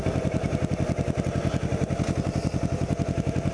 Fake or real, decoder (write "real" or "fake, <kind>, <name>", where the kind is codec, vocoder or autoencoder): real